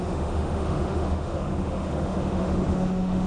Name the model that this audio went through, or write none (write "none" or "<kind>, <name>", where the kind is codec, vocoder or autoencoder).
autoencoder, DAC-VAE